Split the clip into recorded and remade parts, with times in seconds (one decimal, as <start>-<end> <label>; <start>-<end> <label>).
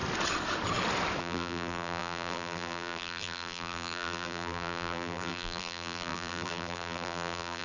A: 0.0-1.2 recorded; 1.2-7.6 remade